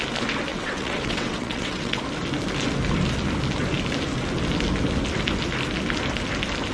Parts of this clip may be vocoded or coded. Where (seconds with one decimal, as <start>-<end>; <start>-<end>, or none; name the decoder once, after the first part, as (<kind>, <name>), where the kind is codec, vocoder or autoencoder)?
0.5-2.0 (vocoder, WaveNeXt)